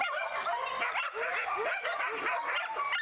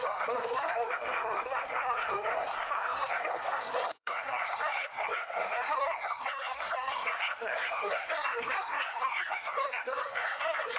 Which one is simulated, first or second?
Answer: second